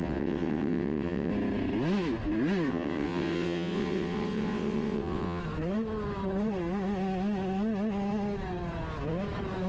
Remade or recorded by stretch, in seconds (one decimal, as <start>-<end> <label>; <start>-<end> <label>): 0.0-1.3 remade; 1.3-2.7 recorded; 2.7-5.4 remade; 5.4-9.7 recorded